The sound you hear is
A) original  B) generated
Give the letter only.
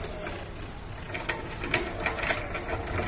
A